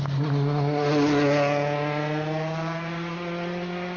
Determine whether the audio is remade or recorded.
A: recorded